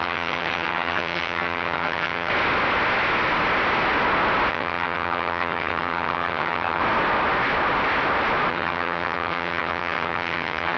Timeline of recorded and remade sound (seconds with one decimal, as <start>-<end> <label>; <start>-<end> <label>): 0.0-2.3 remade; 2.3-4.5 recorded; 4.5-6.8 remade; 6.8-8.5 recorded; 8.5-10.8 remade